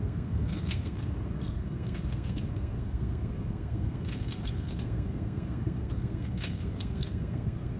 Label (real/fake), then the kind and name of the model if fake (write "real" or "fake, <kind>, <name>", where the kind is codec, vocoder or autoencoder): fake, codec, SNAC